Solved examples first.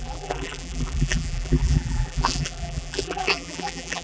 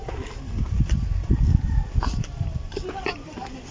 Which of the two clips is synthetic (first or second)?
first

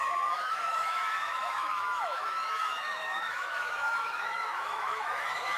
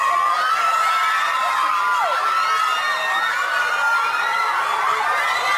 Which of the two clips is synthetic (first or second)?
first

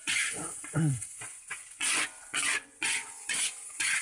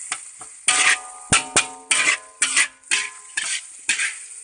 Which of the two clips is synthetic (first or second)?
first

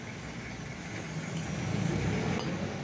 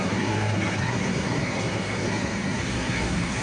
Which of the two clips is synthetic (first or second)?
second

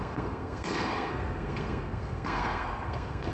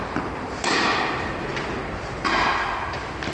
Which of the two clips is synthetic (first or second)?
first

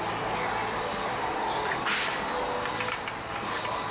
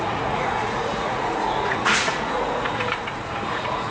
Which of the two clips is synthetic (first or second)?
second